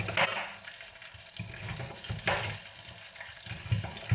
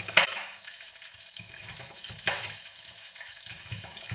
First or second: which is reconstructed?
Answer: second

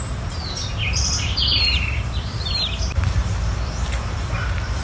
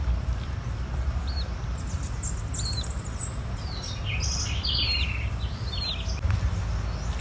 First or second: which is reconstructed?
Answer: first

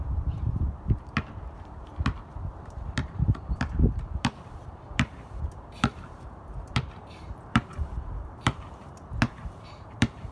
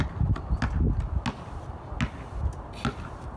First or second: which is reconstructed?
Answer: first